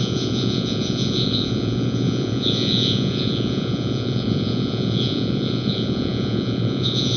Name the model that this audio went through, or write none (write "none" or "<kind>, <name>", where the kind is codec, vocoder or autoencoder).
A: vocoder, Vocos